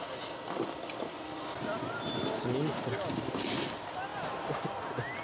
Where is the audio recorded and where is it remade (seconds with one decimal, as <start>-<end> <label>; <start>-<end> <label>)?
0.0-5.2 recorded